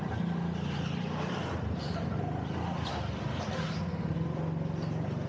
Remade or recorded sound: recorded